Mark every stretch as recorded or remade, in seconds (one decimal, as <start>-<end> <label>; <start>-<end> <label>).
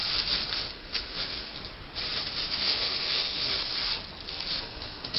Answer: 0.0-0.7 recorded; 0.7-1.6 remade; 1.6-2.5 recorded; 2.5-3.9 remade; 3.9-4.5 recorded; 4.5-5.2 remade